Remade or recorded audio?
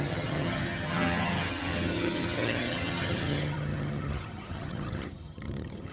remade